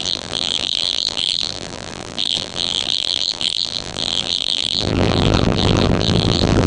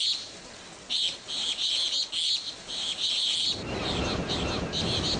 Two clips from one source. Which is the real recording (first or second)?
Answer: second